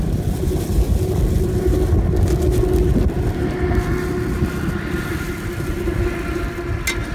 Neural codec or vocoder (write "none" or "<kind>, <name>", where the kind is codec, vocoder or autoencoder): none